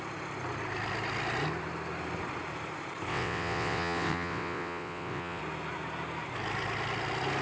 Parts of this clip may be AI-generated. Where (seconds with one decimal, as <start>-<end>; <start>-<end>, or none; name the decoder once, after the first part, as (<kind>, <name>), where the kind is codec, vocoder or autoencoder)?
3.1-5.4 (vocoder, WaveNeXt)